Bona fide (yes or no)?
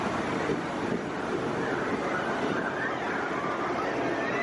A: yes